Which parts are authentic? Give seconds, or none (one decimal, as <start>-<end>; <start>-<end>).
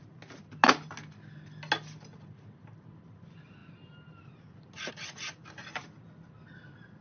0.0-7.0